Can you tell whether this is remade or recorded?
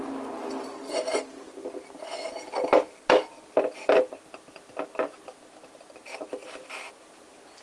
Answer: recorded